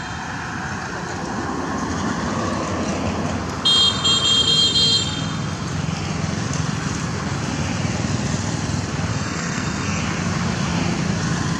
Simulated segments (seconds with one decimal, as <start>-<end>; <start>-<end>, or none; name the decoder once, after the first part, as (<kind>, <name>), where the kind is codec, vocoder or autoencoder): 9.1-10.0 (codec, SNAC)